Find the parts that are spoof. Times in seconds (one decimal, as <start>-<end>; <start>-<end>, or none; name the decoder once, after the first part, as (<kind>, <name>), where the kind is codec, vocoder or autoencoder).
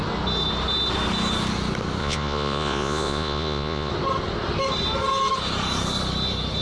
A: 2.0-3.9 (vocoder, Vocos)